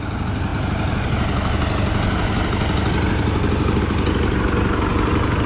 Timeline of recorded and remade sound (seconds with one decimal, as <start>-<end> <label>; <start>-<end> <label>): 0.0-5.5 recorded